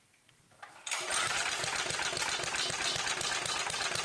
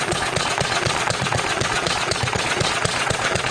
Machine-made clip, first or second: second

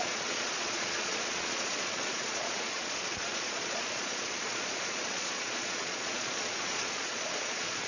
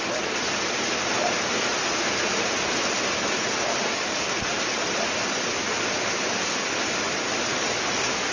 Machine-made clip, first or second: first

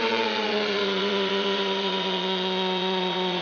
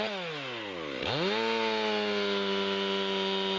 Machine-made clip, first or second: first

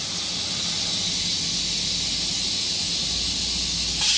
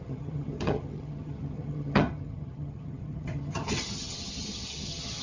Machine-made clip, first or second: second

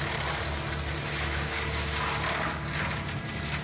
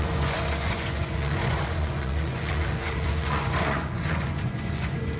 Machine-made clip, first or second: second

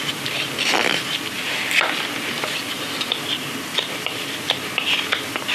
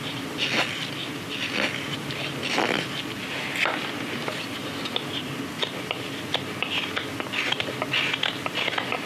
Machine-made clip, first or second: first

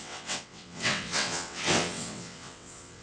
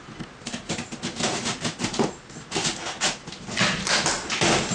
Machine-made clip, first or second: first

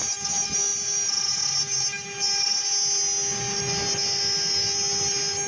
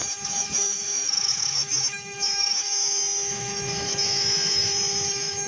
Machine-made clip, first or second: second